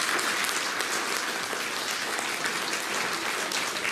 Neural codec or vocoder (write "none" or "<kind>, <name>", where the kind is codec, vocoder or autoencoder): none